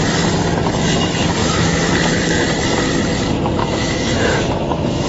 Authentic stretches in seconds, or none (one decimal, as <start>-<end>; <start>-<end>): 0.0-1.4; 1.9-3.6